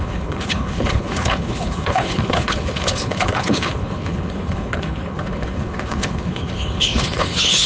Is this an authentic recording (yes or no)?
no